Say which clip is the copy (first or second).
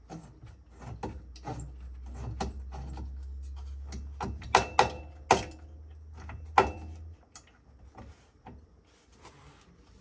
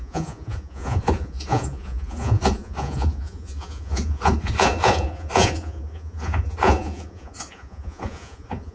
second